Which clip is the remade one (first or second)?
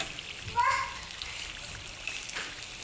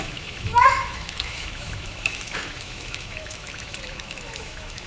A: second